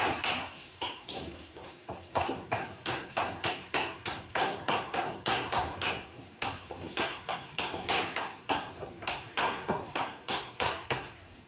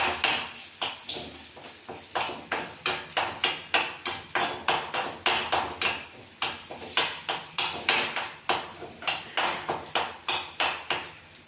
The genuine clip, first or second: second